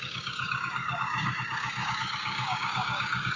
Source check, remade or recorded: remade